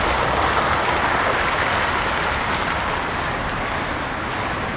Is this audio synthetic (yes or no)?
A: no